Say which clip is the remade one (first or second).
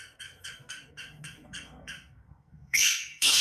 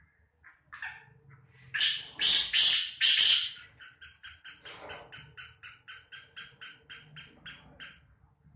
first